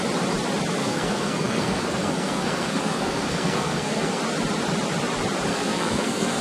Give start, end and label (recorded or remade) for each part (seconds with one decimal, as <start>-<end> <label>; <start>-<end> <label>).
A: 0.0-0.8 recorded; 0.8-4.2 remade; 4.2-5.5 recorded; 5.5-6.4 remade